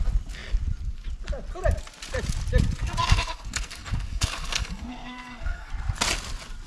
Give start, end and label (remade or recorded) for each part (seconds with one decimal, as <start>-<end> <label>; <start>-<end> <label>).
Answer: 0.0-3.0 recorded; 3.0-5.7 remade; 5.7-6.7 recorded